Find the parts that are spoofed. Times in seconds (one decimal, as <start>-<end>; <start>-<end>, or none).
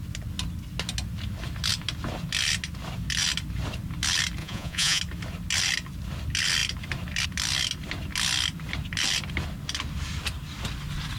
4.4-5.0